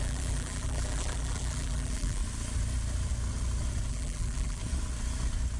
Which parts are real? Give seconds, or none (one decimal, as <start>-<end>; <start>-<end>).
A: 2.2-3.9; 4.6-5.6